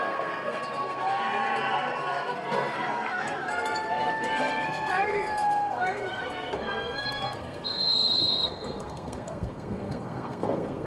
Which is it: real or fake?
fake